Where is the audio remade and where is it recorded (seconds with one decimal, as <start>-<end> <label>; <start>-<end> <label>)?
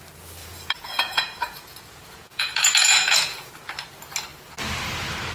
0.0-0.4 recorded; 0.4-3.5 remade; 3.5-5.3 recorded